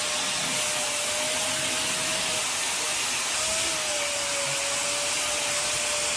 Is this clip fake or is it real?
real